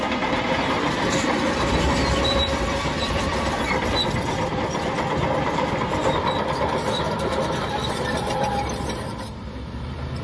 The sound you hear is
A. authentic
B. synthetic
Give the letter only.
B